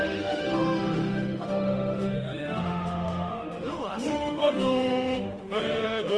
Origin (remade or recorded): remade